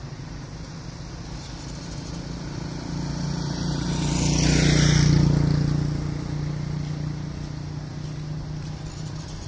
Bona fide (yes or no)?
yes